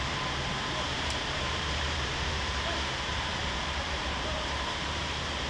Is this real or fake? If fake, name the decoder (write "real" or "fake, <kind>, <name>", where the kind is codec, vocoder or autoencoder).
fake, vocoder, BigVGAN v2